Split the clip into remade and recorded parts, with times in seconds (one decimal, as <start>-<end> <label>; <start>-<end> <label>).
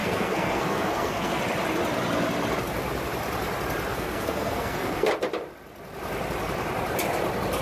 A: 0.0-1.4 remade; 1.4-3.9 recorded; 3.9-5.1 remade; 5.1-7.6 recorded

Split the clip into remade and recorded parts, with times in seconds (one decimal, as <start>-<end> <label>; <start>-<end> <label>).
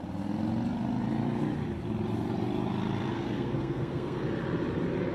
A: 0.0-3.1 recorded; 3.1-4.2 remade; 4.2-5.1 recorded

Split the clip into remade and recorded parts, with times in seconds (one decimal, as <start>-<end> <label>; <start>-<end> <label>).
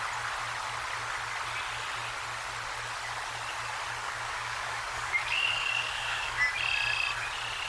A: 0.0-4.0 recorded; 4.0-6.4 remade; 6.4-7.7 recorded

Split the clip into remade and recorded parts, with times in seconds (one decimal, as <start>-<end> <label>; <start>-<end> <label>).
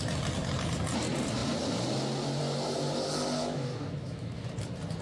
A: 0.0-3.4 recorded; 3.4-4.5 remade; 4.5-5.0 recorded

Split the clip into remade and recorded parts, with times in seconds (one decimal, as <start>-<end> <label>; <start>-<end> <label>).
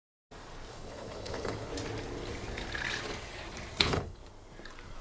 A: 0.0-0.7 recorded; 0.7-1.7 remade; 1.7-3.8 recorded; 3.8-4.2 remade; 4.2-5.0 recorded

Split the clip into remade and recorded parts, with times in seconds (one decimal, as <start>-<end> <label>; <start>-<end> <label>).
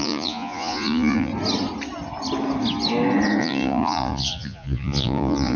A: 0.0-1.3 remade; 1.3-3.4 recorded; 3.4-5.6 remade